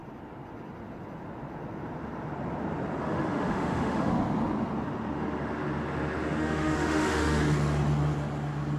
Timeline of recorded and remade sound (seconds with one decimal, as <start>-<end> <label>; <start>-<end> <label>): 0.0-3.0 recorded; 3.0-4.1 remade; 4.1-6.4 recorded; 6.4-7.4 remade; 7.4-8.8 recorded